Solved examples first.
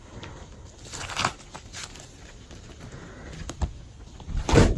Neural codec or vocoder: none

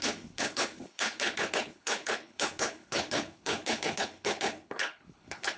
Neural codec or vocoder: codec, HILCodec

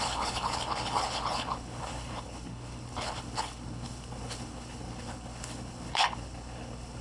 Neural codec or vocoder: codec, HILCodec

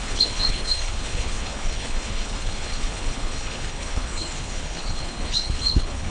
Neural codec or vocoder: codec, HILCodec